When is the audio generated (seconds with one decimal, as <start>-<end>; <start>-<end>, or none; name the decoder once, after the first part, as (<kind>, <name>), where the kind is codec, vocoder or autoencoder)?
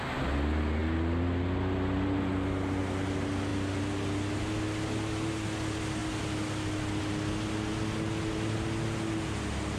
none